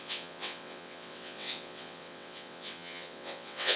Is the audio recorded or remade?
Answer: remade